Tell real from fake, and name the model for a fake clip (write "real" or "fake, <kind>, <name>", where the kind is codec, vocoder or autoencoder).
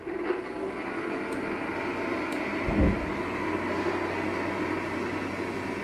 real